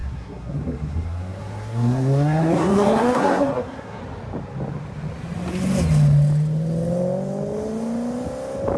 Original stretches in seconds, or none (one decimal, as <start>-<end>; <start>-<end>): 4.0-8.8